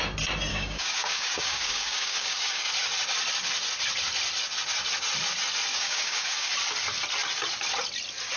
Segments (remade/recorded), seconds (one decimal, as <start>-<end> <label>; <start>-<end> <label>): 0.0-0.5 recorded; 0.5-2.7 remade; 2.7-5.7 recorded; 5.7-6.5 remade; 6.5-8.4 recorded